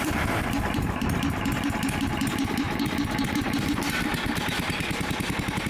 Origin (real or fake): fake